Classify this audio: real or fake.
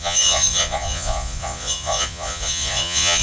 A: fake